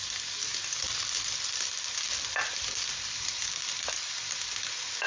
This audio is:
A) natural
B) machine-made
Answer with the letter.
A